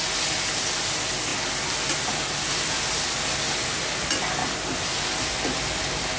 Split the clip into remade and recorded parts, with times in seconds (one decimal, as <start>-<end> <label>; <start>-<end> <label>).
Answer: 0.0-6.2 recorded